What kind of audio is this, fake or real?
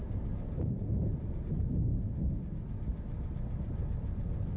real